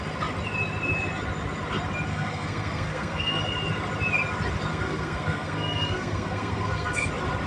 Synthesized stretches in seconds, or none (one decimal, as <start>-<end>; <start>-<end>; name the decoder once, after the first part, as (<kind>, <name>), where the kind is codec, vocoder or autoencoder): 2.1-3.4 (codec, SNAC); 4.7-7.1